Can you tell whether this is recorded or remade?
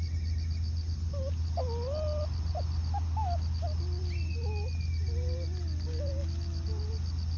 recorded